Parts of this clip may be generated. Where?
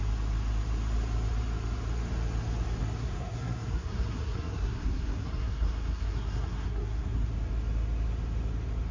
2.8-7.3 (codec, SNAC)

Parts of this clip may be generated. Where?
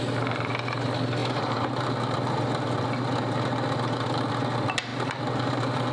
1.2-4.3 (vocoder, BigVGAN v2); 4.9-5.9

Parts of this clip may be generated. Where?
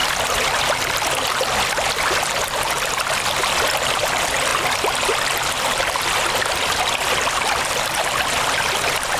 none